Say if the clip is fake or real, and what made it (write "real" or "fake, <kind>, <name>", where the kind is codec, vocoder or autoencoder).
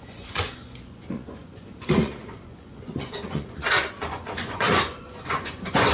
fake, vocoder, Vocos